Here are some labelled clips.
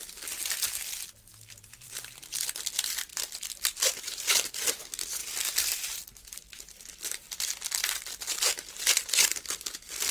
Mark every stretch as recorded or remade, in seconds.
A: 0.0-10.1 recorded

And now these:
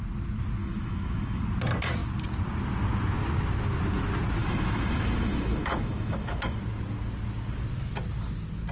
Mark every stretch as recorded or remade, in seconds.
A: 0.0-0.6 recorded; 0.6-1.4 remade; 1.4-4.4 recorded; 4.4-6.6 remade; 6.6-8.7 recorded